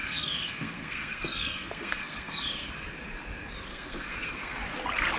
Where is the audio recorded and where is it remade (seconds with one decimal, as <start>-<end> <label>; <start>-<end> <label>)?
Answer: 0.0-2.7 remade; 2.7-3.7 recorded; 3.7-4.6 remade; 4.6-5.2 recorded